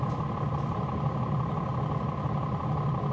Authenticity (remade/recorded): recorded